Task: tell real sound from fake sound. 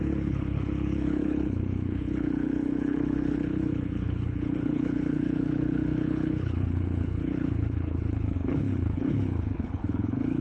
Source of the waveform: fake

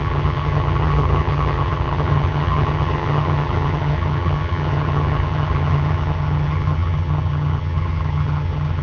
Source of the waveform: fake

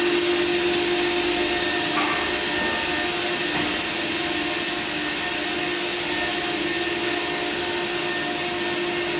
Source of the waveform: real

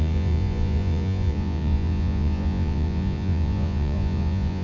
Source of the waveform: fake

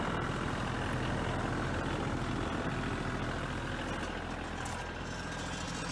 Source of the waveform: real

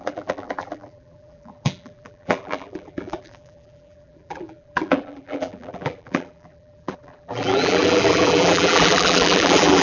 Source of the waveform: fake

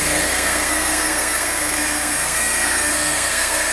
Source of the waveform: fake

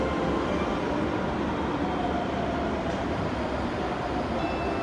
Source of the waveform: real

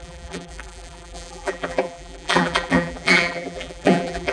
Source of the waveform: fake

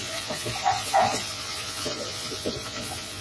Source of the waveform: fake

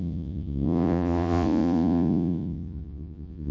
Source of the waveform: fake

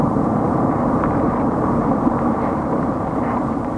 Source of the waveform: fake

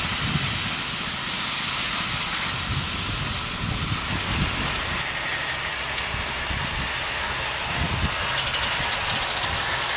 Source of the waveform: real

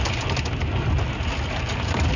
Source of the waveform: real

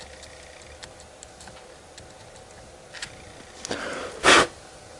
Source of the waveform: real